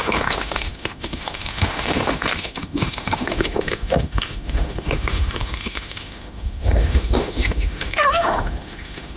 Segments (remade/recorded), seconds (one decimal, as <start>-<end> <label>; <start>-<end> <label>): 0.0-9.2 remade